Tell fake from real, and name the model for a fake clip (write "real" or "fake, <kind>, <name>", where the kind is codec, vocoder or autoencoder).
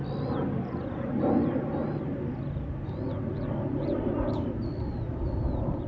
real